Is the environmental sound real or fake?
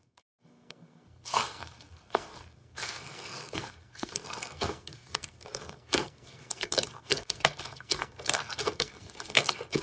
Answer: fake